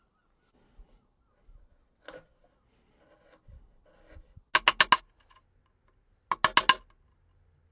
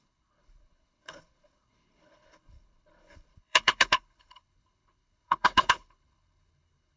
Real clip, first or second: first